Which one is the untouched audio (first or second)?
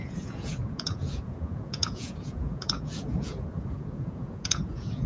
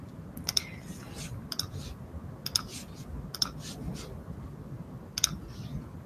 second